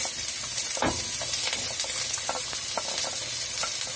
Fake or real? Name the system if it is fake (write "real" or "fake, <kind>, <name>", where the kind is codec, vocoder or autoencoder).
real